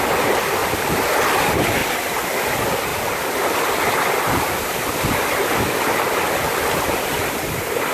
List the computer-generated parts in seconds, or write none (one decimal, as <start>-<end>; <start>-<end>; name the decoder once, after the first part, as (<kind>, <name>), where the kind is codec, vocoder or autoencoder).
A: none